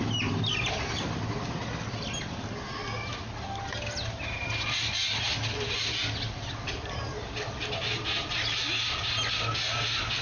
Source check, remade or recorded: recorded